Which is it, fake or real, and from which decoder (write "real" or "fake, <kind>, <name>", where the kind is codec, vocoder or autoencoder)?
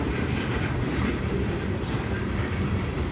fake, vocoder, BigVGAN v2